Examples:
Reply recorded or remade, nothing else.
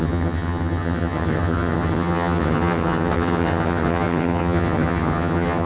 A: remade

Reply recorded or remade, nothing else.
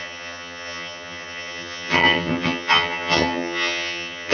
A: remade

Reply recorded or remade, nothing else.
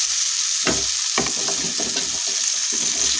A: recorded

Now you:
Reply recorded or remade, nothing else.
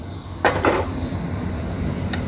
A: recorded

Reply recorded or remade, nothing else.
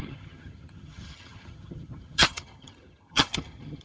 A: remade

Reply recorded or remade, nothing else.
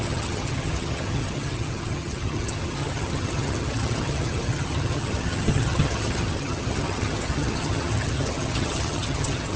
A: remade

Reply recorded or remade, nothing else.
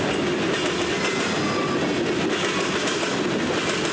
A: recorded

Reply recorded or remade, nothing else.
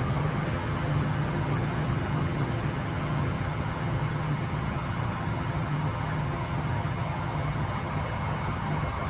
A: remade